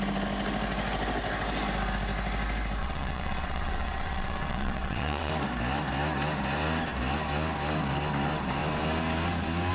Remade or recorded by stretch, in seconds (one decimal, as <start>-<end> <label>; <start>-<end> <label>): 0.0-2.8 recorded; 2.8-5.3 remade; 5.3-9.7 recorded